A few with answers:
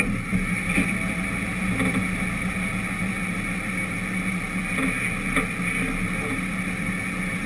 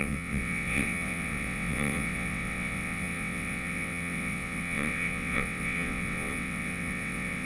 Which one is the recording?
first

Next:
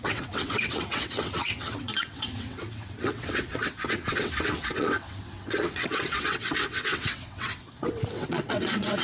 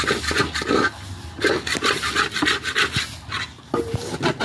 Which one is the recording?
second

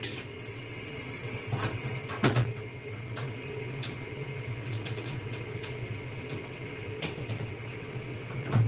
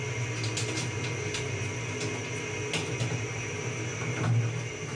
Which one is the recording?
second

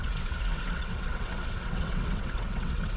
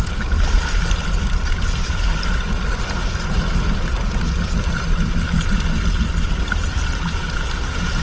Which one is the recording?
second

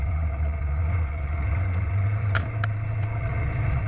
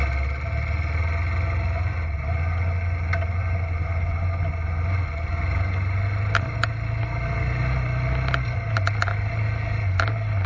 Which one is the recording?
second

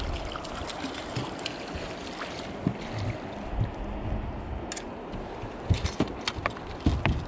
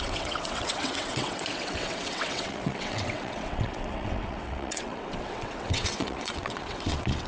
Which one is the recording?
first